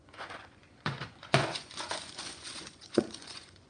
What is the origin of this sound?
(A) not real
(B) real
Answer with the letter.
A